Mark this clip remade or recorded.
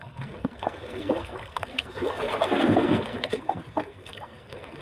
remade